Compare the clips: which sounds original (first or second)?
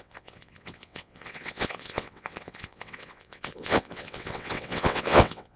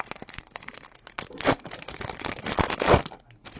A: second